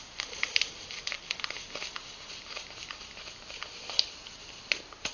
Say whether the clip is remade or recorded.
recorded